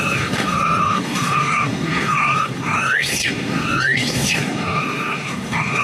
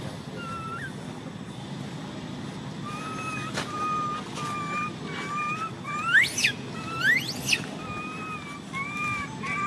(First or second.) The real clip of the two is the second